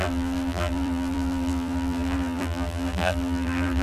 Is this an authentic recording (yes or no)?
no